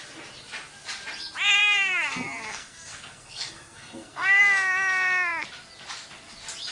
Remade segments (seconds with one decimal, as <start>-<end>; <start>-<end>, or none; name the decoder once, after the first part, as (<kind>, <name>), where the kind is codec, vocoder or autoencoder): 1.6-4.4 (codec, SNAC)